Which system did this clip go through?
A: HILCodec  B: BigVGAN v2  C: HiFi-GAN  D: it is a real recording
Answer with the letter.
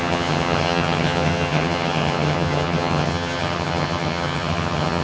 C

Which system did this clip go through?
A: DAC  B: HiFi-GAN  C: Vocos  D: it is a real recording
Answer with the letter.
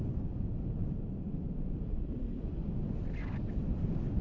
D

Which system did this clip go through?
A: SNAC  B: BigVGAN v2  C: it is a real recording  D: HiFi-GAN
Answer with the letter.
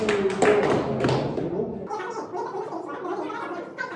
C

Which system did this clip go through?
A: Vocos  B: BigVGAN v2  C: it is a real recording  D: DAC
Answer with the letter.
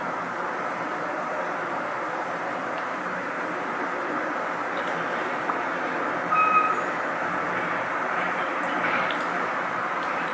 B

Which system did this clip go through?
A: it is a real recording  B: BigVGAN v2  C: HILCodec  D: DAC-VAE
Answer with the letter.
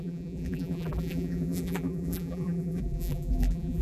B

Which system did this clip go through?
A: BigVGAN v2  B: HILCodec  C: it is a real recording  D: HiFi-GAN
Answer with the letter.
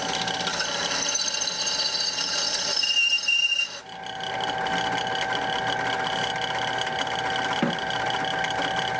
C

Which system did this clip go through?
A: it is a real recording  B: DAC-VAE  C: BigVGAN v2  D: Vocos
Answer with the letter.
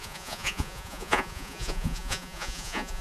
D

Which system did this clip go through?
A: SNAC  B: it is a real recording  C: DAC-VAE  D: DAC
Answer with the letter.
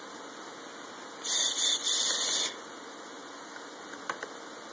B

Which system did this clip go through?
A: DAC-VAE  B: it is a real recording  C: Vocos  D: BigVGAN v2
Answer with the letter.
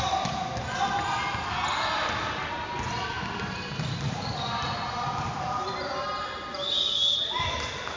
B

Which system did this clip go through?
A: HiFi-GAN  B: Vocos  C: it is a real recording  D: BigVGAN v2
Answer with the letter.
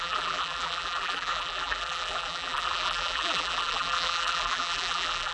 D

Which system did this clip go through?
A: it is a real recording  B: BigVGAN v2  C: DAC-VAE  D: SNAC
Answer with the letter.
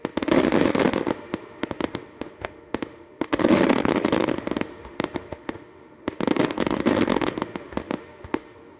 C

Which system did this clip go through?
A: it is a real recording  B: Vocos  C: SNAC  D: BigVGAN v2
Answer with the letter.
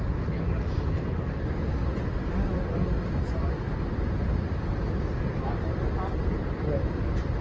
A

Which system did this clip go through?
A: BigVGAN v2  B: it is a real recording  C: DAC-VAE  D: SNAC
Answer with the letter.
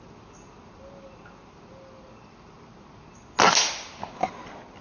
B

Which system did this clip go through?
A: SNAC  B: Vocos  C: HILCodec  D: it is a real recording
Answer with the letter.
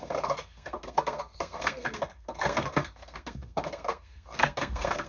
A